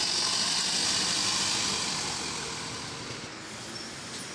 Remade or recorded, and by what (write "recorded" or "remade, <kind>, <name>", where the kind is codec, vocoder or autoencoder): recorded